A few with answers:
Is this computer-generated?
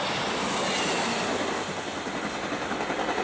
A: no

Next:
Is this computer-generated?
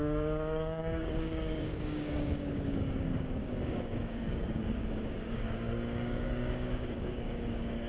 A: yes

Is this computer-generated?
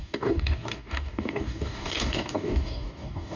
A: yes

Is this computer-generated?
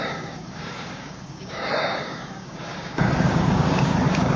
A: yes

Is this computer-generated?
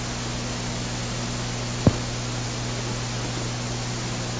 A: no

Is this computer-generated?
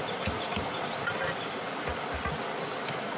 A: no